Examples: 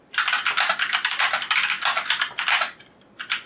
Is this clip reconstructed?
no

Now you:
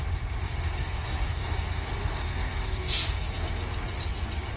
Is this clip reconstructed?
no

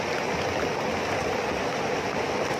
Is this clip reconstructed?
no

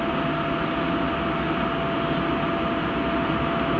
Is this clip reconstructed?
no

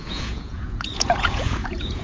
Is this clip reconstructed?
yes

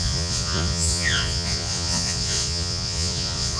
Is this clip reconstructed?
yes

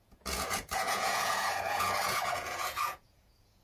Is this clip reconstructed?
yes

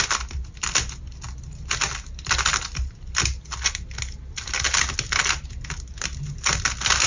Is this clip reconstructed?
no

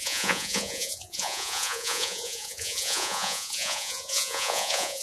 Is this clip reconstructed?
yes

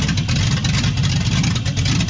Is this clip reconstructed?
no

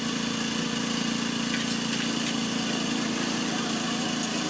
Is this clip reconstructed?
no